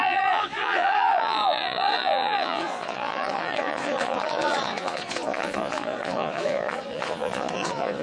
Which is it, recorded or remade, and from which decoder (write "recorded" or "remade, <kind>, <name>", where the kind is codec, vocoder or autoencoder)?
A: remade, vocoder, Vocos